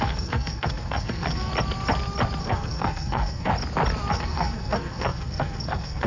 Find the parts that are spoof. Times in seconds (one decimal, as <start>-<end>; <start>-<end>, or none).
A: 0.0-1.5; 2.4-3.5; 4.1-6.1